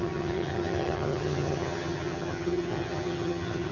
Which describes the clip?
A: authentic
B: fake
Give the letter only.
B